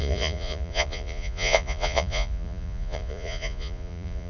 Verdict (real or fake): fake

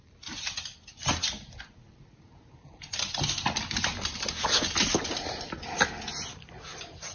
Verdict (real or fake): real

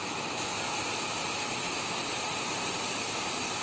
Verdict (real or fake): real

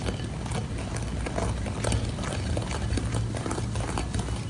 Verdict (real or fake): real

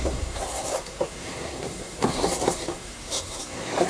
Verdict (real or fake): fake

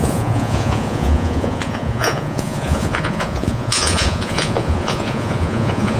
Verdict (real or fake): fake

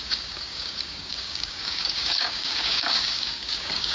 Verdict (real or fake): fake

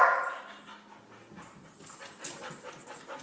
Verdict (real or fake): real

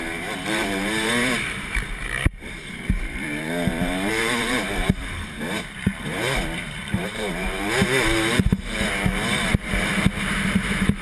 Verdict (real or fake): fake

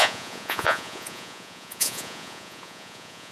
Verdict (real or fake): fake